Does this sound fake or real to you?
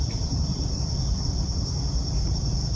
real